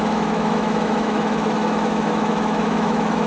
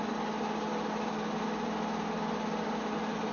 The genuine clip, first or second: second